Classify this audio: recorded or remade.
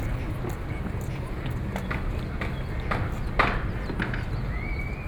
recorded